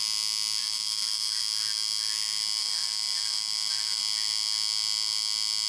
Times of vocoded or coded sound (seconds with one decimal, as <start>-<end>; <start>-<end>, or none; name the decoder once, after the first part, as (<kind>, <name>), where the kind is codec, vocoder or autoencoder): 0.6-1.4 (vocoder, BigVGAN v2); 2.6-4.0